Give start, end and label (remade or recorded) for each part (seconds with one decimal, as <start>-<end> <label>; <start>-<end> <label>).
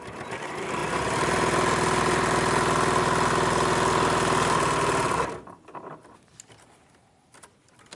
0.0-8.0 recorded